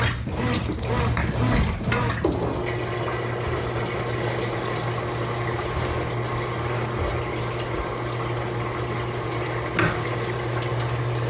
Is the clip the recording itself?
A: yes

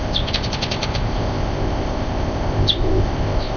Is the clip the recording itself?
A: no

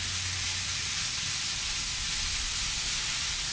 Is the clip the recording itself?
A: yes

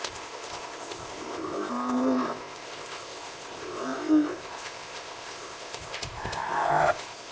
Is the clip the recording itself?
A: no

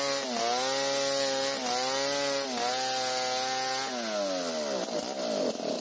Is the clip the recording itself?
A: yes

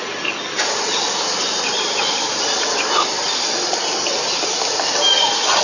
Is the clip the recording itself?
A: yes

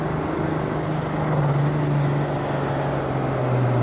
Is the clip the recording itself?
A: yes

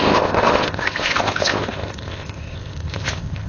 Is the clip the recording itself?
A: no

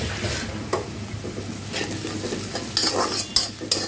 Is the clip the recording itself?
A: yes